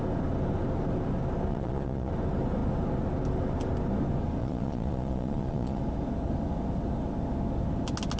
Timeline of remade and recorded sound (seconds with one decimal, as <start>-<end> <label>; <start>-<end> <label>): 0.0-1.5 recorded; 1.5-2.1 remade; 2.1-4.4 recorded; 4.4-5.8 remade; 5.8-8.2 recorded